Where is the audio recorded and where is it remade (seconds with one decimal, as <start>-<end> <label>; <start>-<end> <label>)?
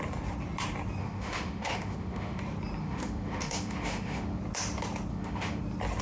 0.0-1.0 recorded; 1.0-2.4 remade; 2.4-2.8 recorded; 2.8-4.4 remade; 4.4-5.1 recorded; 5.1-5.6 remade; 5.6-6.0 recorded